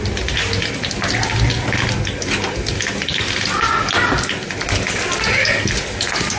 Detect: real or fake real